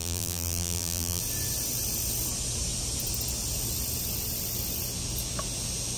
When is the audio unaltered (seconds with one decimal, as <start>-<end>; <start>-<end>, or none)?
1.2-6.0